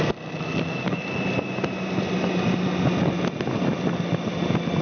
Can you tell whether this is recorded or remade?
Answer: recorded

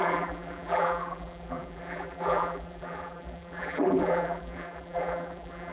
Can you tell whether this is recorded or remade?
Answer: remade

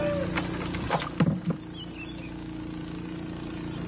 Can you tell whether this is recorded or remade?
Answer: recorded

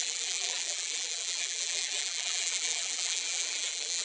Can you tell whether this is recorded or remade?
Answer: remade